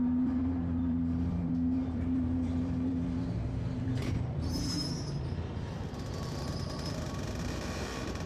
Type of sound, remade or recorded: remade